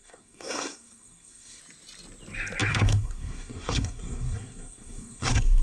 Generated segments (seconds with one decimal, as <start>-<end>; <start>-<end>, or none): 0.0-1.6; 2.7-5.6